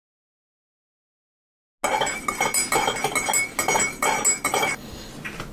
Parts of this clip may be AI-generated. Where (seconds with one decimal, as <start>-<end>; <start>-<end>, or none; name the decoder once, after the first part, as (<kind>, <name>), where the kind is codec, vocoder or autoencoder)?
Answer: 4.5-5.1 (codec, DAC)